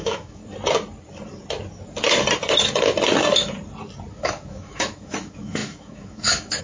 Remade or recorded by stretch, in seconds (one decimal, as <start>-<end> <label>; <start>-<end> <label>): 0.0-0.4 remade; 0.4-4.1 recorded; 4.1-6.6 remade